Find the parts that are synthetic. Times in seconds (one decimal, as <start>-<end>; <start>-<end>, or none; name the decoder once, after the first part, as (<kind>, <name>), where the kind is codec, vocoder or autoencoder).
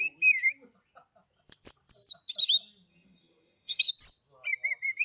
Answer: 2.9-3.9 (vocoder, HiFi-GAN)